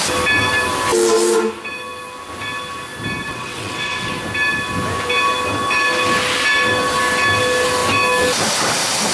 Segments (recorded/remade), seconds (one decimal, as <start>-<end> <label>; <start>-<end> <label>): 0.0-3.3 recorded; 3.3-4.1 remade; 4.1-9.1 recorded